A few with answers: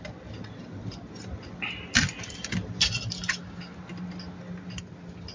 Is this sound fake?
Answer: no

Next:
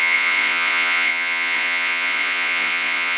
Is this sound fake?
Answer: yes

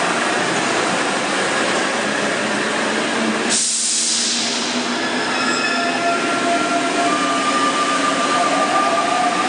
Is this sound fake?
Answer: no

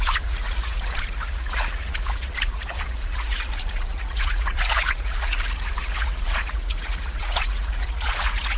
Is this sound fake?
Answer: yes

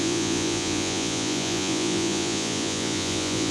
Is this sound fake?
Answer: yes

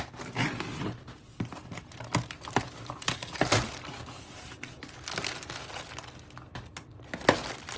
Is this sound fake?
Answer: no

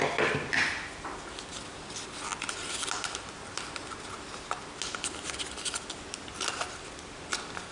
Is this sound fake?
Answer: no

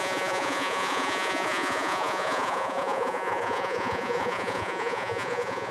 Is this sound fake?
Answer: yes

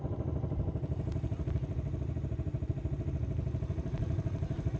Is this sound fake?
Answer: no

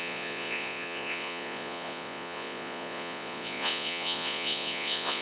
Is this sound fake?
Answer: yes